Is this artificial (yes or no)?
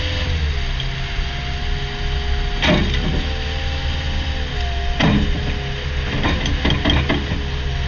no